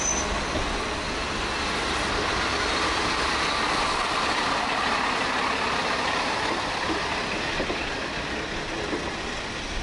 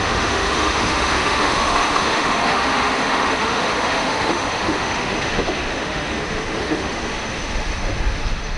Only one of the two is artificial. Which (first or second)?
second